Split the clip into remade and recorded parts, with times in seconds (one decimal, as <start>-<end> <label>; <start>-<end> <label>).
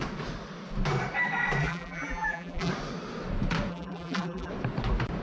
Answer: 0.0-1.6 recorded; 1.6-2.7 remade; 2.7-3.7 recorded; 3.7-4.5 remade; 4.5-5.2 recorded